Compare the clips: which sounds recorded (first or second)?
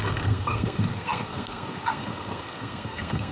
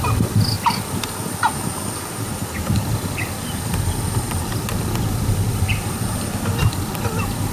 second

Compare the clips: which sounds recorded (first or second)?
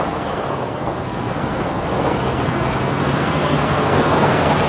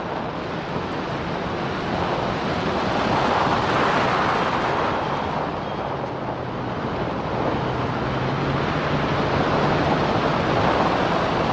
second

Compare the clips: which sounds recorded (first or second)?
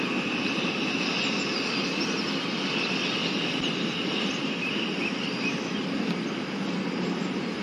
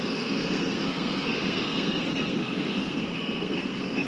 first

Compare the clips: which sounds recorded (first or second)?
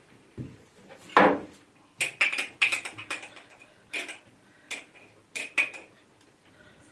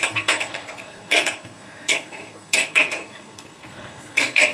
first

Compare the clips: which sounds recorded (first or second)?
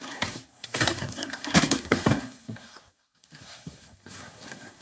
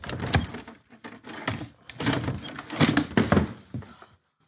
second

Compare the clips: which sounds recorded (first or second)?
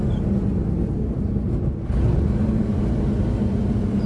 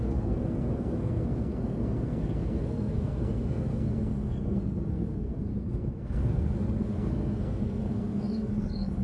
first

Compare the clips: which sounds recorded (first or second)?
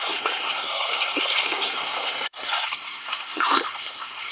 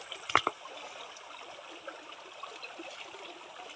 second